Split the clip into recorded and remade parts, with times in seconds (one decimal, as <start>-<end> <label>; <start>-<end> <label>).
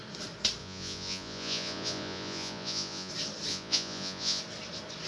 0.0-0.6 recorded; 0.6-3.1 remade; 3.1-3.5 recorded; 3.5-4.4 remade; 4.4-5.1 recorded